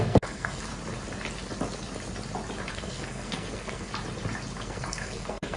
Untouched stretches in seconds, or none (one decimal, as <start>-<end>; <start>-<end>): 0.7-2.7; 3.9-4.6